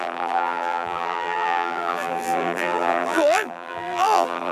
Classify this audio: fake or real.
fake